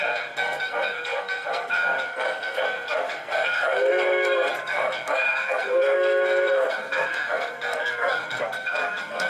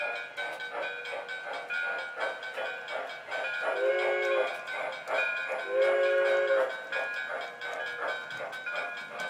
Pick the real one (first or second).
second